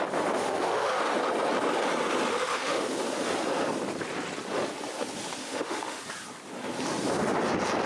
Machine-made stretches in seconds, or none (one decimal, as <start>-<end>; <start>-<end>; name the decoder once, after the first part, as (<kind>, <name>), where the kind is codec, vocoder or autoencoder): 0.4-1.0 (autoencoder, DAC-VAE); 2.3-2.9; 5.4-6.0